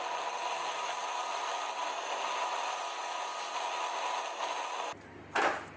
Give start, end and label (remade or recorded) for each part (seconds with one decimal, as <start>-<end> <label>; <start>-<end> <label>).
0.0-1.8 recorded; 1.8-3.0 remade; 3.0-5.8 recorded